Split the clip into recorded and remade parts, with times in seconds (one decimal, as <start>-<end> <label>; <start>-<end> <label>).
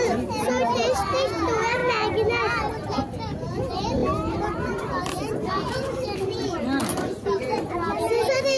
0.0-1.8 remade; 1.8-2.7 recorded; 2.7-8.6 remade